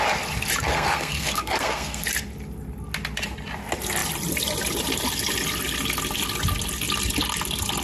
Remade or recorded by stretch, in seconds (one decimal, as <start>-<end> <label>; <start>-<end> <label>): 0.0-0.7 recorded; 0.7-2.0 remade; 2.0-7.8 recorded